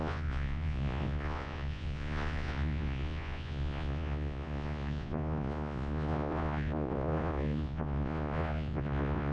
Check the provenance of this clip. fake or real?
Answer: fake